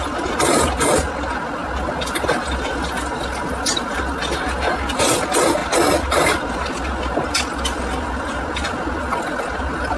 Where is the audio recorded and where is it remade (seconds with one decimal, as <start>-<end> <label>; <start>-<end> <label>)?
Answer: 0.0-10.0 recorded

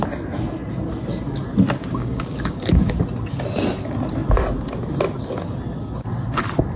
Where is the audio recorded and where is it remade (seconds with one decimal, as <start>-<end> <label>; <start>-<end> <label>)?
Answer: 0.0-1.8 recorded; 1.8-2.9 remade; 2.9-6.8 recorded

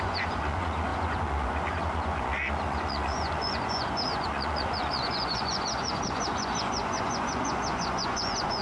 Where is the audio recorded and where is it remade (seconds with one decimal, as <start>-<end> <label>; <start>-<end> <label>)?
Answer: 0.0-8.6 remade

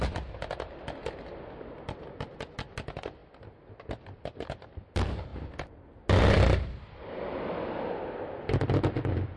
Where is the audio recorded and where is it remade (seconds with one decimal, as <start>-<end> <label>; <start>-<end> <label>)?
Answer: 0.0-9.4 recorded

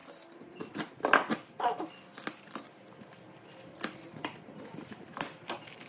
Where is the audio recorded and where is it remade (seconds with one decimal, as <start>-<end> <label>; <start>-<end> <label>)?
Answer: 0.0-5.9 recorded

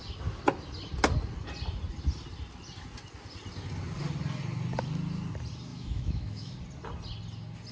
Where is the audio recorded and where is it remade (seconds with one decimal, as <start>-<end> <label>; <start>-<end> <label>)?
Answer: 0.0-5.7 recorded; 5.7-6.6 remade; 6.6-7.7 recorded

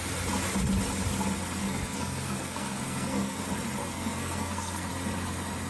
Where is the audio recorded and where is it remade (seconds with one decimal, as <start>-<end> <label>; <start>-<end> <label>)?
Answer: 0.0-1.6 recorded; 1.6-3.4 remade; 3.4-3.8 recorded; 3.8-4.9 remade; 4.9-5.7 recorded